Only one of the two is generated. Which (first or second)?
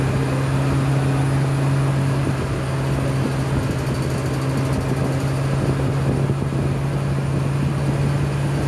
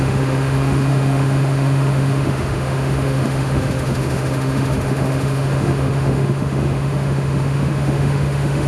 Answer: second